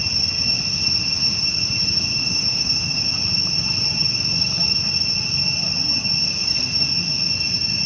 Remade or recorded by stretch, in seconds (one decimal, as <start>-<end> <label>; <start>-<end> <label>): 0.0-2.2 recorded; 2.2-3.0 remade; 3.0-7.9 recorded